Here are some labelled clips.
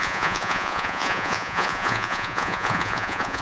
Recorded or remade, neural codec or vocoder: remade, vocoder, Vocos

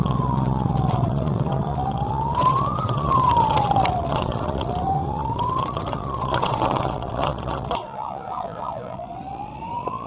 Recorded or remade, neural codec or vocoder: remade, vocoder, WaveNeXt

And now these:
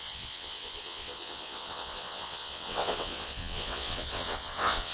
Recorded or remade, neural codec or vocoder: remade, vocoder, WaveNeXt